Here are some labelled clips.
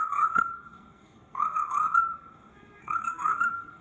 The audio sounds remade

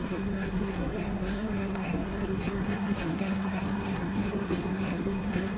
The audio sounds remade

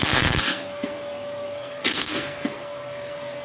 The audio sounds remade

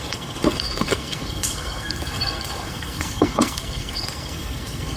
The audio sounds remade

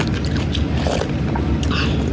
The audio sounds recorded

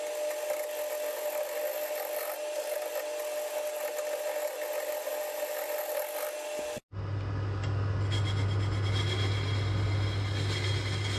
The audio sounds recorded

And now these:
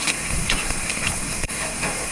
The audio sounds remade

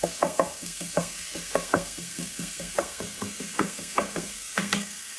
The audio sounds remade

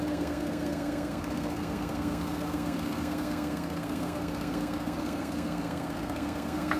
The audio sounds remade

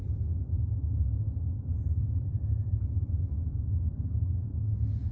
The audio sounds recorded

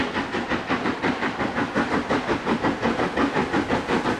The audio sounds recorded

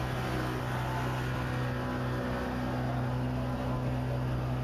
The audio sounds recorded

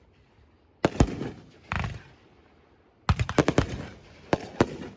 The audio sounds recorded